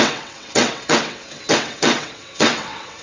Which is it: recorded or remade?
remade